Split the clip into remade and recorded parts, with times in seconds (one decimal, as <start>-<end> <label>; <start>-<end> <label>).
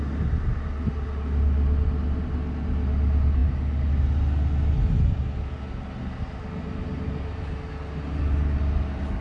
0.0-9.2 recorded